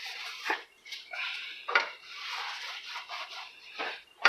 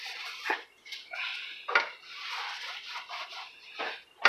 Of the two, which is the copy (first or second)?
first